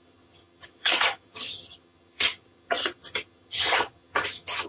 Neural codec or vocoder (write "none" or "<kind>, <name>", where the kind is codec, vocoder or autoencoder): vocoder, HiFi-GAN